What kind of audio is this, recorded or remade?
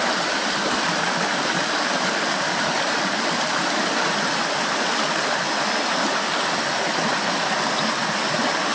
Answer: recorded